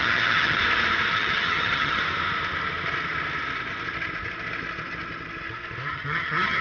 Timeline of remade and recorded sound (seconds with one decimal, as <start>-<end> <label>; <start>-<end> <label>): 0.0-0.6 remade; 0.6-1.1 recorded; 1.1-2.0 remade; 2.0-5.9 recorded; 5.9-6.6 remade